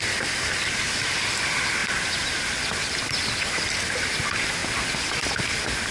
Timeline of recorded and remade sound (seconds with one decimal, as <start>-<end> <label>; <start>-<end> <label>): 0.0-5.9 recorded